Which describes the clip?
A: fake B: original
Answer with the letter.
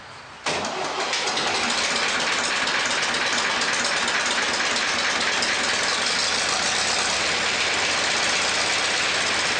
B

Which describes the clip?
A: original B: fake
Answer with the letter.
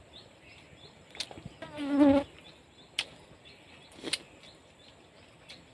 A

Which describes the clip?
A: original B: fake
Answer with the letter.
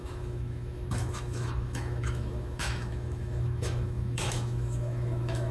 B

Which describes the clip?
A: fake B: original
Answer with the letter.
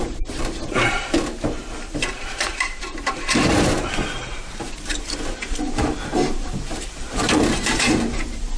A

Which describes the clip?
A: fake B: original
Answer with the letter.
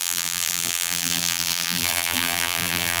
A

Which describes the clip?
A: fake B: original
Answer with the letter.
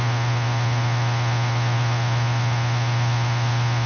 B